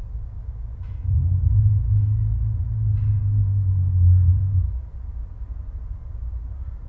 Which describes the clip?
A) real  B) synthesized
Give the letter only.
A